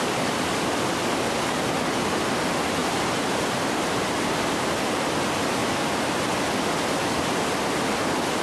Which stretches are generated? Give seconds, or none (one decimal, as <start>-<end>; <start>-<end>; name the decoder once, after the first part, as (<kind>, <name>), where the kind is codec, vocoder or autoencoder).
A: 2.8-5.0 (vocoder, BigVGAN v2); 5.6-6.3